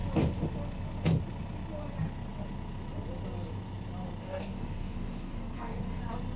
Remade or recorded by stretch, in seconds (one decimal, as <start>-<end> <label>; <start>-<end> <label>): 0.0-4.2 recorded; 4.2-6.0 remade; 6.0-6.4 recorded